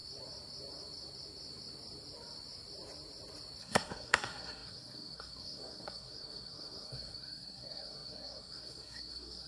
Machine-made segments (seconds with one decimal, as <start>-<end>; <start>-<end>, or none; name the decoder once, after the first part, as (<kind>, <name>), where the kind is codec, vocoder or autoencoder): 3.6-9.5 (codec, SNAC)